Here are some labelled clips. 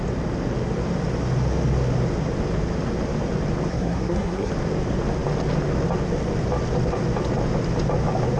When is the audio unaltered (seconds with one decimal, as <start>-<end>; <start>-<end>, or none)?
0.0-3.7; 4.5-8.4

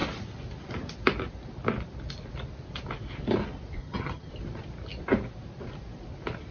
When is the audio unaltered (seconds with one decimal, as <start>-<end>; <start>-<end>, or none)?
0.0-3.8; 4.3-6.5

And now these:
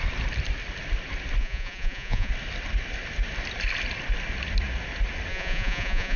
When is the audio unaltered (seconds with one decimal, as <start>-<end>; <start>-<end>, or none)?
0.0-1.4; 2.3-5.3

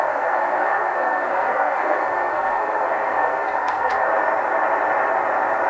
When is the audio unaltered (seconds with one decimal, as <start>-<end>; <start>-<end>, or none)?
4.1-5.7